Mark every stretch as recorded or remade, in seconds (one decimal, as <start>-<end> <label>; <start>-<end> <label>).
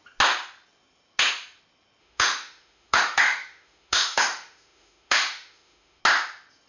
0.0-2.0 recorded; 2.0-6.0 remade; 6.0-6.7 recorded